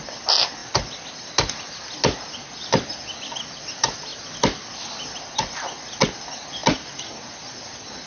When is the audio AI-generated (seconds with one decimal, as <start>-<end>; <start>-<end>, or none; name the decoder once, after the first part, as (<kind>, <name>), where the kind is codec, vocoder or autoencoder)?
none